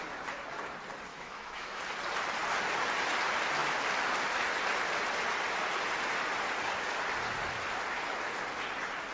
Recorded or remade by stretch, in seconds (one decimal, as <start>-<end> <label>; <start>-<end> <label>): 0.0-1.1 recorded; 1.1-1.8 remade; 1.8-9.1 recorded